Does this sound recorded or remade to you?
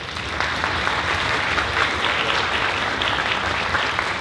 recorded